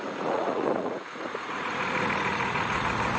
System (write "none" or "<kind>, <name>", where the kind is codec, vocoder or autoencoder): vocoder, Vocos